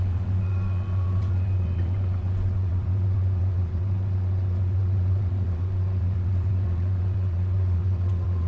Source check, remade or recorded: remade